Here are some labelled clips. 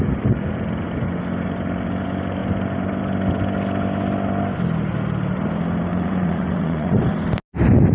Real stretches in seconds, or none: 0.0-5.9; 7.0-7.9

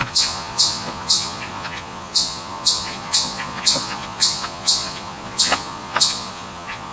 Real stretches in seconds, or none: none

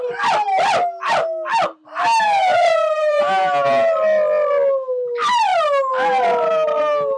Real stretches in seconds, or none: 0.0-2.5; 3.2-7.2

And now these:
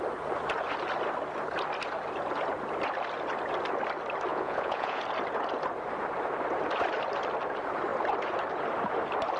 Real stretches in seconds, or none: 0.0-4.3; 5.0-9.4